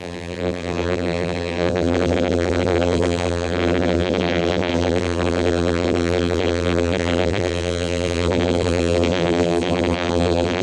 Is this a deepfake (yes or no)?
yes